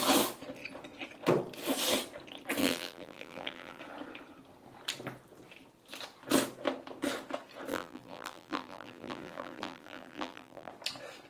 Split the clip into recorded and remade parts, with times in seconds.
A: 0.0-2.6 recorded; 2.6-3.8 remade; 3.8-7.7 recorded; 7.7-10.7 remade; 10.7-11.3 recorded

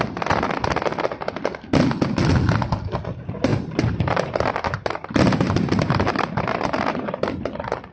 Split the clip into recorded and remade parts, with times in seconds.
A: 0.0-3.5 recorded; 3.5-7.5 remade; 7.5-7.9 recorded

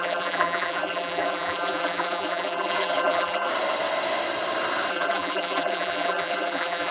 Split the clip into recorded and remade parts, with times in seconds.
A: 0.0-3.5 remade; 3.5-4.9 recorded; 4.9-6.9 remade

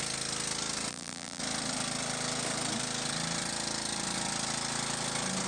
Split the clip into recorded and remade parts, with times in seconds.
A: 0.0-0.9 recorded; 0.9-1.4 remade; 1.4-5.5 recorded

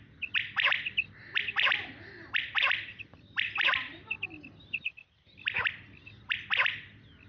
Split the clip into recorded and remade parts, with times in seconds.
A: 0.0-2.6 recorded; 2.6-6.5 remade; 6.5-7.3 recorded

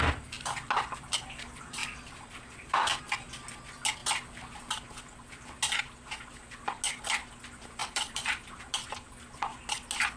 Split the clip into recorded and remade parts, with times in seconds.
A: 0.0-1.8 recorded; 1.8-3.0 remade; 3.0-7.8 recorded; 7.8-8.5 remade; 8.5-10.2 recorded

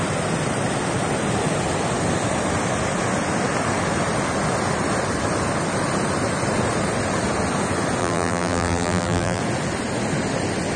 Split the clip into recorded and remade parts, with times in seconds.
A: 0.0-8.0 recorded; 8.0-9.4 remade; 9.4-10.8 recorded